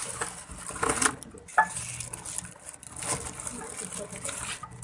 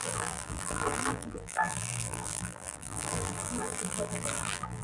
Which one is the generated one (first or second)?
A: second